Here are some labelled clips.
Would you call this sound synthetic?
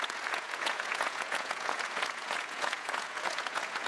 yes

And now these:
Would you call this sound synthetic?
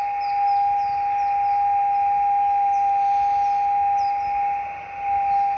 no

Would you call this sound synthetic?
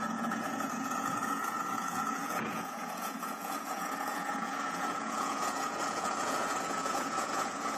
yes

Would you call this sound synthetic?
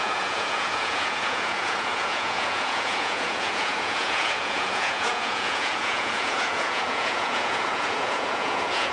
yes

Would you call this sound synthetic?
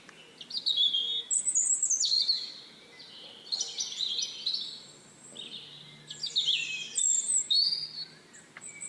no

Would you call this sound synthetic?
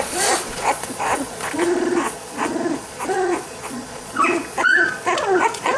yes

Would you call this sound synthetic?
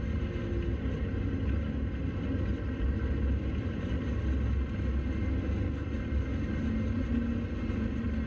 no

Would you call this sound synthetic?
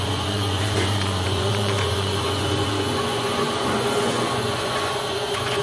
yes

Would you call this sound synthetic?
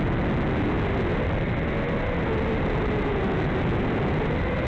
no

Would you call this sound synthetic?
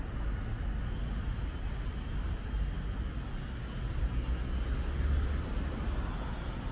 no